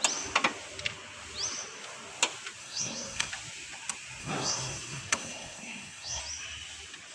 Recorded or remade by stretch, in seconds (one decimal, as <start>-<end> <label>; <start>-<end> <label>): 0.0-2.6 recorded; 2.6-3.3 remade; 3.3-4.2 recorded; 4.2-6.2 remade; 6.2-7.1 recorded